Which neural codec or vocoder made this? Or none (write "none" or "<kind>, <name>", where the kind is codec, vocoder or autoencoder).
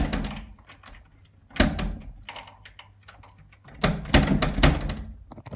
none